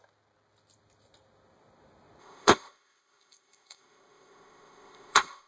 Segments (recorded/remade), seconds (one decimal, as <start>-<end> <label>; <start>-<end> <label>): 0.0-2.2 recorded; 2.2-5.5 remade